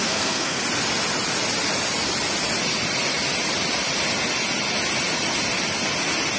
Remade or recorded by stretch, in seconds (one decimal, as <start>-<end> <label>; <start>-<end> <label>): 0.0-0.6 remade; 0.6-6.4 recorded